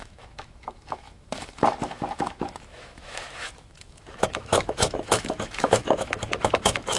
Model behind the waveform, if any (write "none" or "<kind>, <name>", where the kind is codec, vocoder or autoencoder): autoencoder, DAC-VAE